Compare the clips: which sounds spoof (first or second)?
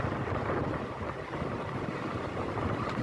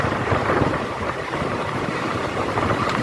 second